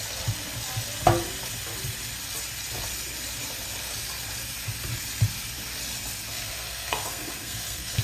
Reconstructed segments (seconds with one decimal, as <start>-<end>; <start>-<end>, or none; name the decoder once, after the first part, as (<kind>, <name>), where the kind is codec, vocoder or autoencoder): 6.3-8.0 (codec, SNAC)